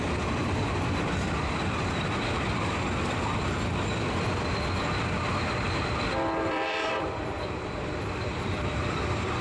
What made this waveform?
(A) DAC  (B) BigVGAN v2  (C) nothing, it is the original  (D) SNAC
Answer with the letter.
B